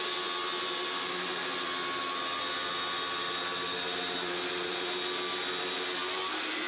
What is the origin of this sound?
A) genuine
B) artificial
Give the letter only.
A